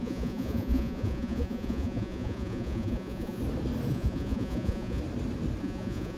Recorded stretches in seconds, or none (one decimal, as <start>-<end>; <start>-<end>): 3.4-3.9; 5.0-5.6

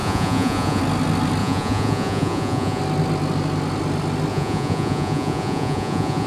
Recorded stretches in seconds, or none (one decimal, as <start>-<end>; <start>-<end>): 0.8-1.4; 2.8-4.3

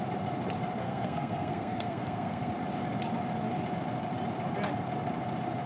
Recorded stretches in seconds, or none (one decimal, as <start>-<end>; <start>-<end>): 0.0-0.8; 2.5-5.7

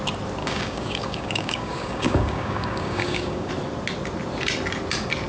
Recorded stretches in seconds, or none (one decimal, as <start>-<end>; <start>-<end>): 0.0-0.4; 3.5-5.3

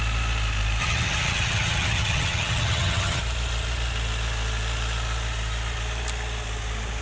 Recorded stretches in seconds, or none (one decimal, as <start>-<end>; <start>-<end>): 0.0-0.8; 3.2-7.0

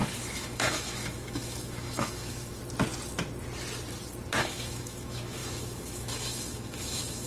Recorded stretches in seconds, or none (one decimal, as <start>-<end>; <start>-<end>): 2.6-4.4

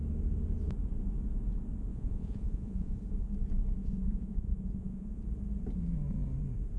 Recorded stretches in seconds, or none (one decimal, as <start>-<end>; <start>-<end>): 0.0-1.9; 2.9-3.8; 5.2-6.8